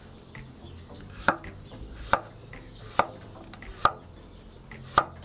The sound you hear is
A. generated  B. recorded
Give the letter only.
B